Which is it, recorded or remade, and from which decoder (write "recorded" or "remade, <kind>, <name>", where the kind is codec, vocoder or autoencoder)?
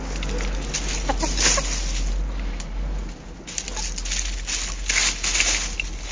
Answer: recorded